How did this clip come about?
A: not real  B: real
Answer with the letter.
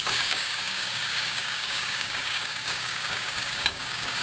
A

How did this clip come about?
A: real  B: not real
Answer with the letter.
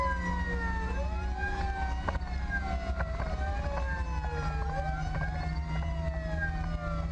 A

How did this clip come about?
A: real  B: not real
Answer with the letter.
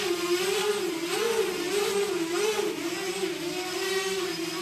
A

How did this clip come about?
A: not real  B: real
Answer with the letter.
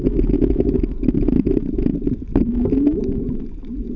B